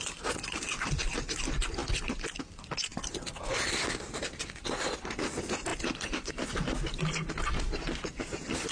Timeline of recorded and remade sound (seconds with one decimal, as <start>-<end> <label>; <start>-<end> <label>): 0.0-8.7 recorded